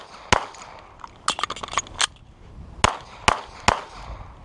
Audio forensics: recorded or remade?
recorded